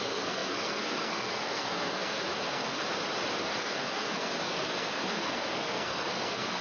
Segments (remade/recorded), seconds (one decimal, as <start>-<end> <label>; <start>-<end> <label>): 0.0-2.8 remade; 2.8-3.4 recorded; 3.4-6.6 remade